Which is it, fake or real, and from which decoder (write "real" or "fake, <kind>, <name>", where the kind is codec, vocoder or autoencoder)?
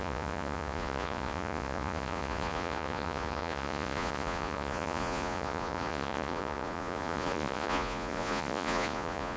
fake, vocoder, Vocos